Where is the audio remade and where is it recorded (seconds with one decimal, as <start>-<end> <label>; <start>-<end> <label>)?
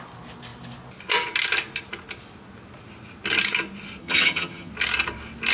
0.0-4.0 recorded; 4.0-4.7 remade; 4.7-5.5 recorded